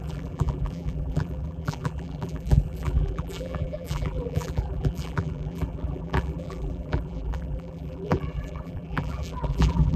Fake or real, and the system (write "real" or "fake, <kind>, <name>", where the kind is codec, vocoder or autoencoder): fake, vocoder, BigVGAN v2